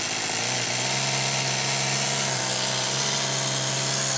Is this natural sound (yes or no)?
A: yes